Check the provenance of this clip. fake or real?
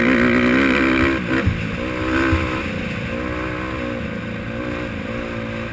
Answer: real